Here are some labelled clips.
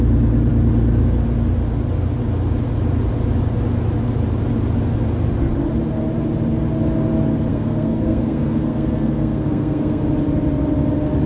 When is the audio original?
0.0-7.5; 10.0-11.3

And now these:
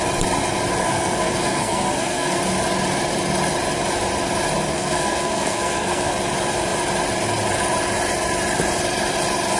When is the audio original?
0.0-0.8; 2.4-4.7; 6.1-9.6

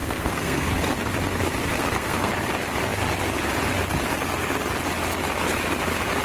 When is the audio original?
0.7-1.7; 2.3-6.2

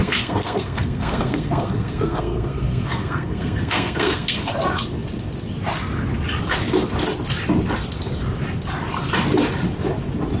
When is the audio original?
4.5-10.4

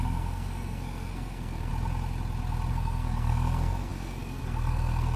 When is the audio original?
1.7-2.7

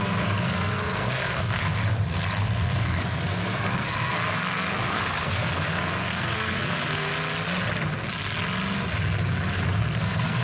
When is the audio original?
1.8-2.8; 7.1-9.6

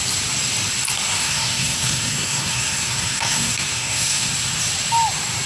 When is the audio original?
0.0-1.2; 4.3-5.5

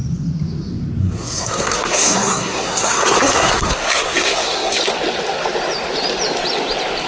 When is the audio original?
0.0-1.0; 4.8-7.1